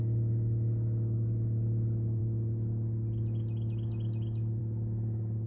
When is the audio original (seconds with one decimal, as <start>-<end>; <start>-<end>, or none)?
0.0-5.5